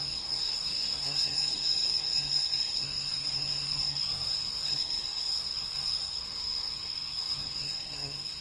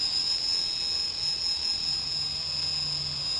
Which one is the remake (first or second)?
first